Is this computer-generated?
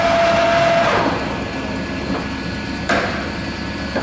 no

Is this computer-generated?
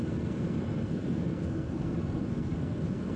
yes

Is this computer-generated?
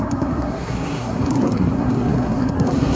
yes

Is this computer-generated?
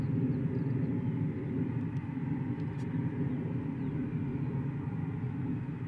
no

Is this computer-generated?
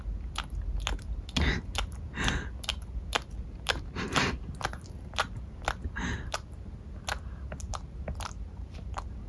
no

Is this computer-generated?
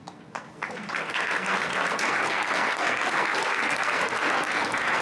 yes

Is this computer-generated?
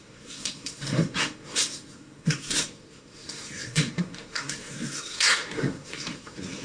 yes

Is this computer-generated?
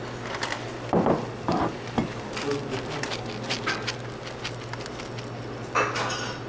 no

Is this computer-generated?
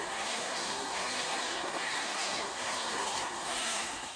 yes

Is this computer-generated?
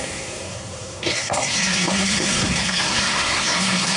yes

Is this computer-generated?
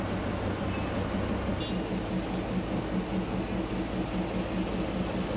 no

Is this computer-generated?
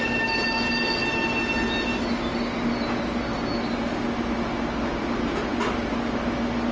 no